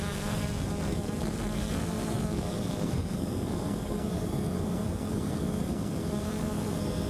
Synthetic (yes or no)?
yes